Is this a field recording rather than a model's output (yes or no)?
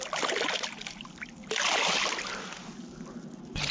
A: yes